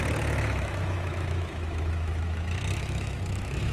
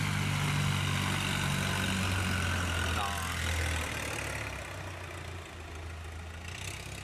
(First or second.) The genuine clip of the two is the second